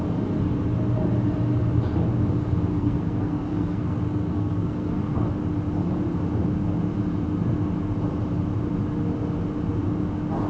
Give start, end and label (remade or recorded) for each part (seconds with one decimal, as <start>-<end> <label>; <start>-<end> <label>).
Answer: 0.0-2.7 recorded; 2.7-5.3 remade; 5.3-10.5 recorded